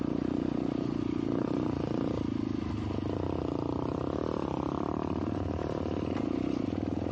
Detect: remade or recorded recorded